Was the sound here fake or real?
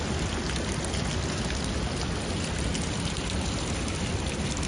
fake